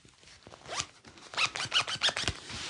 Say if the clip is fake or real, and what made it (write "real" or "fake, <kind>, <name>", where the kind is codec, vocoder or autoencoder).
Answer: real